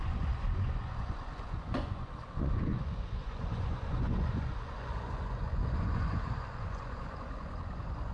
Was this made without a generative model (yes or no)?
no